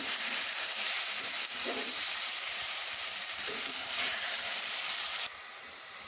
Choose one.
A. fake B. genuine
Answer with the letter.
A